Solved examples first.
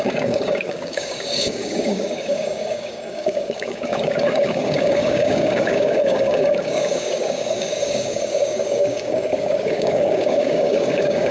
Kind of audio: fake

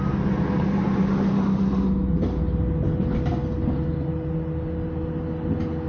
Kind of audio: real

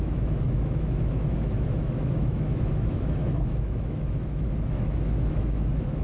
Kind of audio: fake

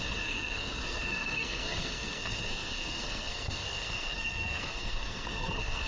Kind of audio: fake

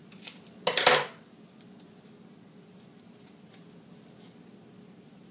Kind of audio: real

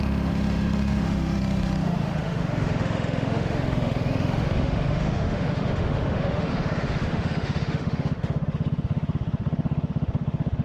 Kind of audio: fake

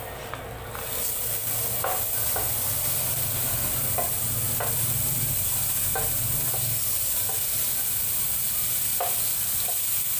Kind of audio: real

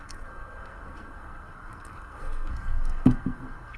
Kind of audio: fake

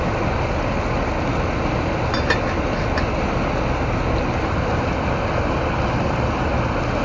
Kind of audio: real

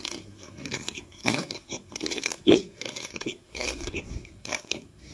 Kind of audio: fake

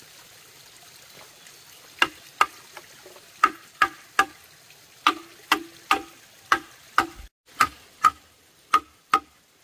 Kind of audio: real